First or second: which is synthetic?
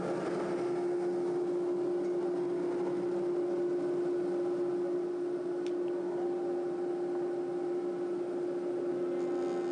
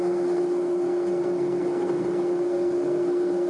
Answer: second